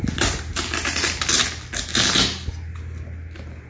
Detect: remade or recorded recorded